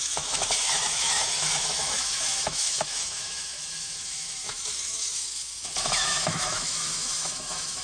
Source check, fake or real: fake